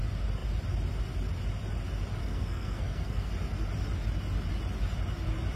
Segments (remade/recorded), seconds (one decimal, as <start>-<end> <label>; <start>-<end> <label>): 0.0-2.2 recorded; 2.2-3.3 remade; 3.3-5.6 recorded

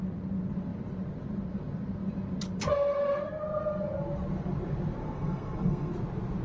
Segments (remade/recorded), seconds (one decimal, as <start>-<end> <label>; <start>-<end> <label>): 0.0-5.0 recorded; 5.0-5.9 remade; 5.9-6.4 recorded

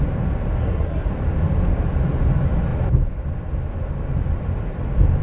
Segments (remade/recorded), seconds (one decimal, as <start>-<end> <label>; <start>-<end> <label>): 0.0-0.6 recorded; 0.6-1.1 remade; 1.1-5.2 recorded

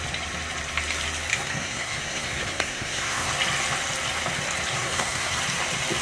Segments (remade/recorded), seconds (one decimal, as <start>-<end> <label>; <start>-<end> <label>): 0.0-1.3 recorded; 1.3-3.3 remade; 3.3-4.7 recorded; 4.7-5.4 remade; 5.4-6.0 recorded

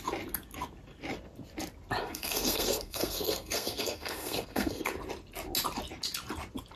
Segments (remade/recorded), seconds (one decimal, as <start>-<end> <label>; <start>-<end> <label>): 0.0-2.0 recorded; 2.0-4.9 remade; 4.9-6.8 recorded

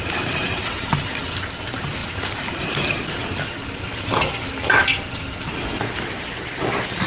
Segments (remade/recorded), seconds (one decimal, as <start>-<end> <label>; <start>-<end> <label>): 0.0-7.1 recorded

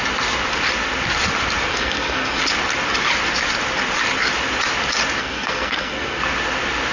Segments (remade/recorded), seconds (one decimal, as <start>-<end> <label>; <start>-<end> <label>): 0.0-1.7 recorded; 1.7-2.4 remade; 2.4-5.2 recorded; 5.2-6.2 remade; 6.2-6.9 recorded